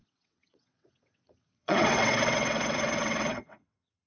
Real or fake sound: fake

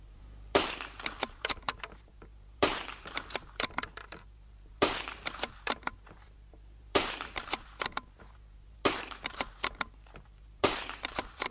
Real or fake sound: fake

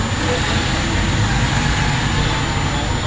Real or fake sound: real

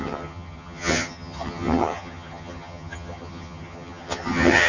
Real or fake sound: fake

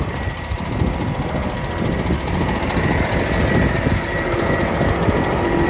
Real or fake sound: real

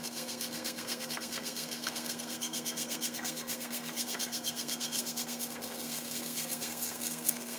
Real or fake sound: fake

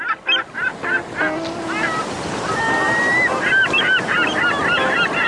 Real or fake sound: real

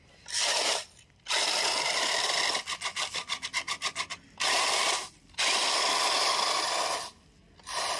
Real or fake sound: real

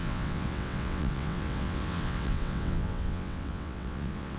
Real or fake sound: fake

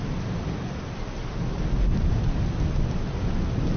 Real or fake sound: real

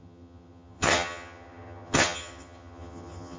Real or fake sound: fake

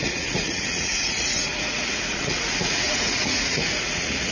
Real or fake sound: fake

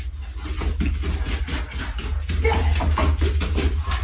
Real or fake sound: real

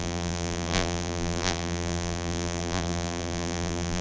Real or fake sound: fake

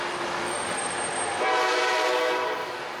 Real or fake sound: real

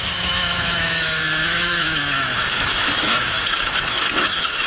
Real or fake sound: fake